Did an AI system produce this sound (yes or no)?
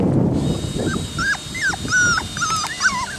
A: no